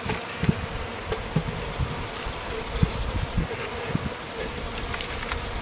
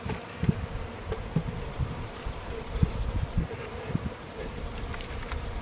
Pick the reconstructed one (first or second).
second